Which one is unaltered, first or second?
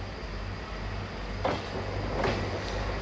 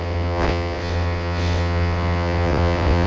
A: first